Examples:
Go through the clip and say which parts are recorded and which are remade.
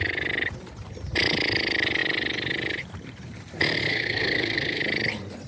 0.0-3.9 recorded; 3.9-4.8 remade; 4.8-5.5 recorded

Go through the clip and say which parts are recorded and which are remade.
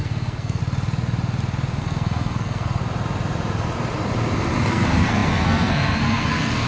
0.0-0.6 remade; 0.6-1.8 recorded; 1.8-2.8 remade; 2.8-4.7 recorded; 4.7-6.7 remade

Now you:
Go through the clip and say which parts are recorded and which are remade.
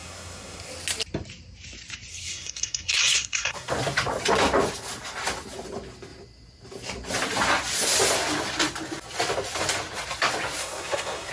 0.0-0.7 remade; 0.7-2.1 recorded; 2.1-3.7 remade; 3.7-10.6 recorded; 10.6-11.3 remade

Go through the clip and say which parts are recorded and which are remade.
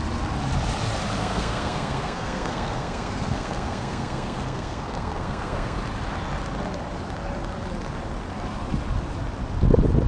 0.0-1.2 recorded; 1.2-5.8 remade; 5.8-10.1 recorded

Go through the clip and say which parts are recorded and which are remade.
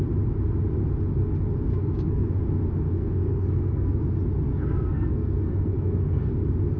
0.0-1.7 recorded; 1.7-2.3 remade; 2.3-2.9 recorded; 2.9-4.0 remade; 4.0-4.5 recorded; 4.5-6.3 remade; 6.3-6.8 recorded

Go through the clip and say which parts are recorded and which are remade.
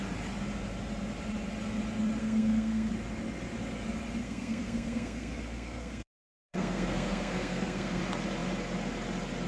0.0-2.2 recorded; 2.2-2.9 remade; 2.9-4.2 recorded; 4.2-8.0 remade; 8.0-9.5 recorded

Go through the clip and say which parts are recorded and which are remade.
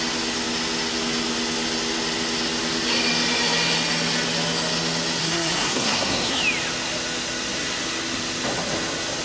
0.0-5.2 recorded; 5.2-6.4 remade; 6.4-9.2 recorded